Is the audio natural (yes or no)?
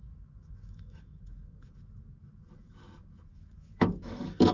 no